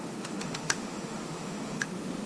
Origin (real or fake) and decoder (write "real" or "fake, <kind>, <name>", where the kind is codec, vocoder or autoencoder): fake, autoencoder, DAC-VAE